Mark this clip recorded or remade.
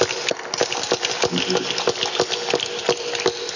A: recorded